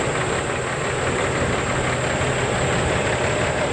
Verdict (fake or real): real